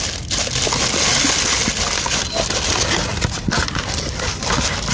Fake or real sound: real